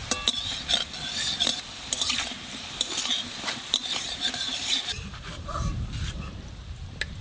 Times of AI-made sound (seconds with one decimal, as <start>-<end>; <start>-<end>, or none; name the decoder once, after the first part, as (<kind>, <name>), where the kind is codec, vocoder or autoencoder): 2.0-7.2 (vocoder, BigVGAN v2)